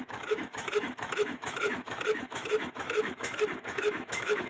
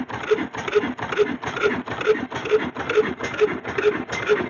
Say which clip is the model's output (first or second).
first